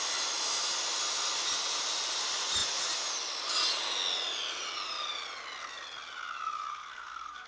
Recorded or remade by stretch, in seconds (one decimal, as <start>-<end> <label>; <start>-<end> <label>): 0.0-6.7 recorded; 6.7-7.5 remade